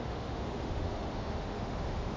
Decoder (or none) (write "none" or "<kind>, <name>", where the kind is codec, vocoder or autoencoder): autoencoder, DAC-VAE